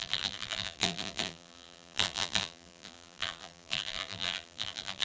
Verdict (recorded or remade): remade